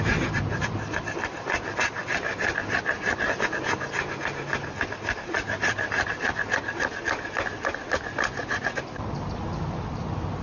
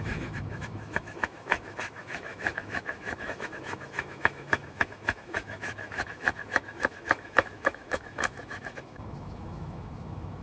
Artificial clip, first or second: second